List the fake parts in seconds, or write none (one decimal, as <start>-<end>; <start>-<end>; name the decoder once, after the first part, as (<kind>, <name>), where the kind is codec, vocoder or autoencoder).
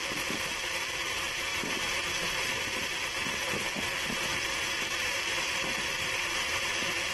1.5-2.5 (vocoder, BigVGAN v2); 4.3-7.1